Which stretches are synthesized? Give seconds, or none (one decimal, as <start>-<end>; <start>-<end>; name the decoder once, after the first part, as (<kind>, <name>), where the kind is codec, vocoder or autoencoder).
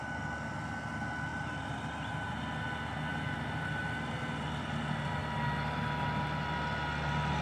1.3-2.4 (vocoder, BigVGAN v2); 3.1-3.8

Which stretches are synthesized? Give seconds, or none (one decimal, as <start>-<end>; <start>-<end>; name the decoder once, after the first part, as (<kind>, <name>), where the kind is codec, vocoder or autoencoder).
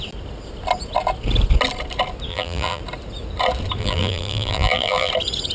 2.3-2.8 (vocoder, BigVGAN v2); 3.8-5.1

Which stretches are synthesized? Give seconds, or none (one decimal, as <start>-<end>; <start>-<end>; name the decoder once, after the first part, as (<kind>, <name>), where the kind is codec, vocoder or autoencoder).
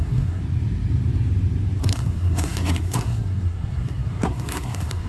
0.0-0.4 (codec, SNAC); 1.8-5.1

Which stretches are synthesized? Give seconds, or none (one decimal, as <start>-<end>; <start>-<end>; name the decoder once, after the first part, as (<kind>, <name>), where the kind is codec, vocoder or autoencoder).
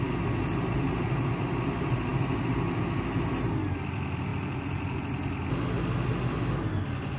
none